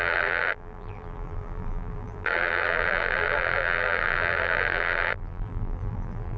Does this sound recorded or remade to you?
remade